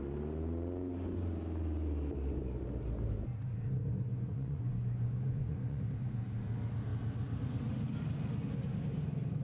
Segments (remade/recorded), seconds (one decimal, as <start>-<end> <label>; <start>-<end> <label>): 0.0-4.1 recorded; 4.1-5.8 remade; 5.8-9.4 recorded